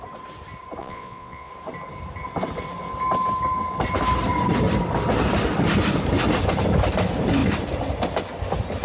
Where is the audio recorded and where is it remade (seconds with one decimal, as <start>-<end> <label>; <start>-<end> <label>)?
0.0-0.8 recorded; 0.8-1.5 remade; 1.5-8.8 recorded